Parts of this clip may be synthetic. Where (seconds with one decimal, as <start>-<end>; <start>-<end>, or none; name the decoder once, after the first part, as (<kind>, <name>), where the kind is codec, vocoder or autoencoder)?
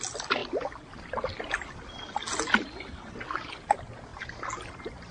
none